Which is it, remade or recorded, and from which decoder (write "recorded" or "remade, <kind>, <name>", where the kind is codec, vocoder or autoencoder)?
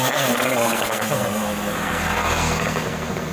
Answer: remade, codec, SNAC